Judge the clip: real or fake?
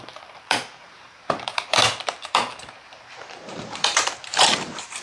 fake